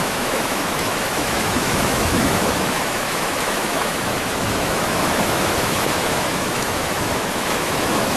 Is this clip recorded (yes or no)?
no